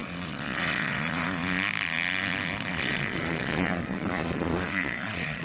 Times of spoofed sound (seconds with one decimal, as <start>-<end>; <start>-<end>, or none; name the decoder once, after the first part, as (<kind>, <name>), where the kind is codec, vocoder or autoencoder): 0.0-1.1 (vocoder, Vocos); 2.7-5.4